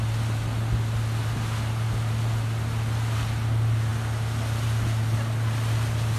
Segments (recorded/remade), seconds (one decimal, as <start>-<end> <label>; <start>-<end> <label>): 0.0-6.2 recorded